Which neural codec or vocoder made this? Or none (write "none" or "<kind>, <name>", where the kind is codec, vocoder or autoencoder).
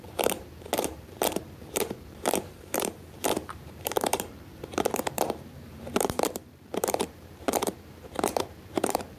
vocoder, BigVGAN v2